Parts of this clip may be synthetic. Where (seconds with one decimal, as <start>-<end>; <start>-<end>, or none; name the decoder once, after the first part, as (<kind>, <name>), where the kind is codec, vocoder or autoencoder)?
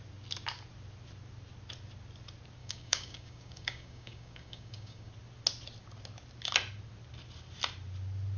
2.6-5.1 (codec, DAC)